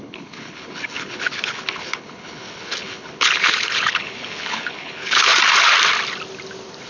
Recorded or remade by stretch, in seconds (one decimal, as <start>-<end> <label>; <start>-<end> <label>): 0.0-5.3 remade; 5.3-6.9 recorded